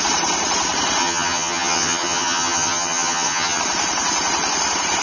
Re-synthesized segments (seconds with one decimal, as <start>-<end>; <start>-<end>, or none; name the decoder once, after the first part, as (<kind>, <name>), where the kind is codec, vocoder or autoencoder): 1.0-3.6 (vocoder, HiFi-GAN)